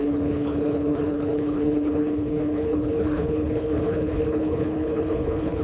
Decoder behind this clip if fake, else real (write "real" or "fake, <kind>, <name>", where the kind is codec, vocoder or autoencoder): fake, codec, HILCodec